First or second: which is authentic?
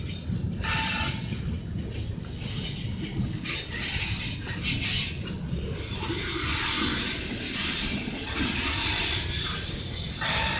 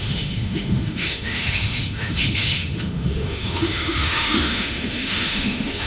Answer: first